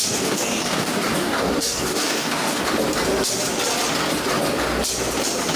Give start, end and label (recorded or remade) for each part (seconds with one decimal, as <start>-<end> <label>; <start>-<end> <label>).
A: 0.0-2.6 remade; 2.6-5.6 recorded